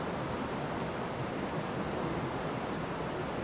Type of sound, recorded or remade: recorded